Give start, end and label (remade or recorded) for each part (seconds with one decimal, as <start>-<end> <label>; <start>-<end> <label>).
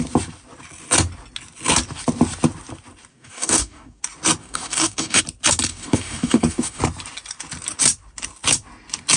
0.0-3.1 recorded; 3.1-4.0 remade; 4.0-4.4 recorded; 4.4-5.2 remade; 5.2-5.7 recorded; 5.7-6.8 remade; 6.8-9.2 recorded